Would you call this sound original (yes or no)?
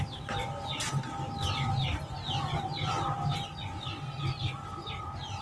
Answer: yes